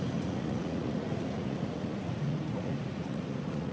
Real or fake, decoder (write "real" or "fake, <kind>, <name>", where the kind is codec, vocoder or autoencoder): fake, vocoder, Vocos